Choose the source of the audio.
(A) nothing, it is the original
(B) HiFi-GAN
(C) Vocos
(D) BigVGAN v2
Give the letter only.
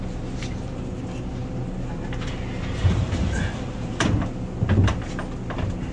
A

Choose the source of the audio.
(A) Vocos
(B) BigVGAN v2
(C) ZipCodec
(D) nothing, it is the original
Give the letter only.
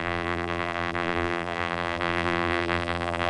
B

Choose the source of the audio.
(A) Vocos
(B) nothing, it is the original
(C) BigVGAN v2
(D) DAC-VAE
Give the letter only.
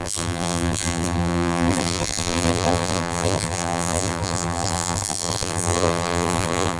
C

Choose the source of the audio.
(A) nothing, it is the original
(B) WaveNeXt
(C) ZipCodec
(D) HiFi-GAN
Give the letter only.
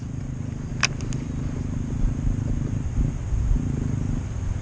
A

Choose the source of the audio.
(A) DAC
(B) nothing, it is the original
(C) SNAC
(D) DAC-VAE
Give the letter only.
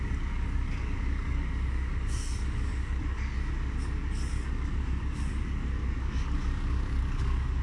A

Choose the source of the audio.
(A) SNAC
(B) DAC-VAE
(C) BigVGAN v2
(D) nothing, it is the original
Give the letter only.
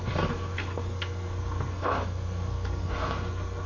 A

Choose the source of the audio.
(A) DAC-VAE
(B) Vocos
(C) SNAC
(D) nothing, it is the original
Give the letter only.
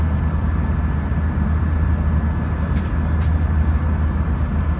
D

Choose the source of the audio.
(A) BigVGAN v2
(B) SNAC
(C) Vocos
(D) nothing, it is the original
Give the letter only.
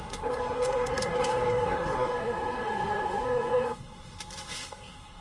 B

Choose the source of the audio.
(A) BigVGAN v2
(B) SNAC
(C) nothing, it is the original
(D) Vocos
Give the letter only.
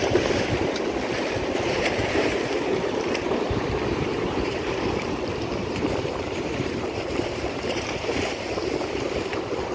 A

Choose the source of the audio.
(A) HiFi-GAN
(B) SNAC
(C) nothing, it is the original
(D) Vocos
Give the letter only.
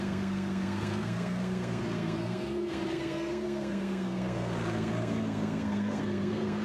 B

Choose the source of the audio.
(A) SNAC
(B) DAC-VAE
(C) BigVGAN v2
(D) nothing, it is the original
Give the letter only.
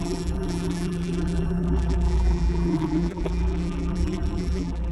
C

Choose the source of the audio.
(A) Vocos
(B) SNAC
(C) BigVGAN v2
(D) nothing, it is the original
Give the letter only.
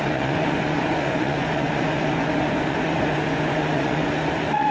A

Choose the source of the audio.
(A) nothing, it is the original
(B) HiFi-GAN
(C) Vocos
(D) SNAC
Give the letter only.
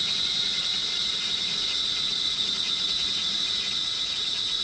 C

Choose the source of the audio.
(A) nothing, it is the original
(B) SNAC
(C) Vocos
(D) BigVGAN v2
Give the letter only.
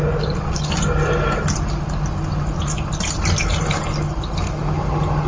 A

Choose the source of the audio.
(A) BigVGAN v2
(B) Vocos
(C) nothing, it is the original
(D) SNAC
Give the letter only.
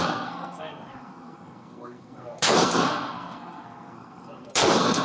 D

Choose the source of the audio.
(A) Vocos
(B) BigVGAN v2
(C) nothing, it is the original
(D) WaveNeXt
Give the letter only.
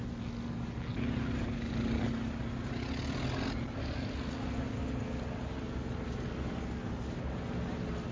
C